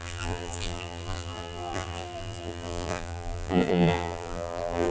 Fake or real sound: fake